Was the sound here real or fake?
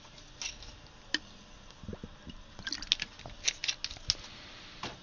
real